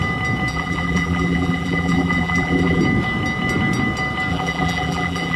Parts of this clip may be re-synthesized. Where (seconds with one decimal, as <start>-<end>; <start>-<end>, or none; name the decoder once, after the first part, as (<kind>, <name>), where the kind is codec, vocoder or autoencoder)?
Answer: 0.5-2.8 (vocoder, BigVGAN v2); 4.3-5.4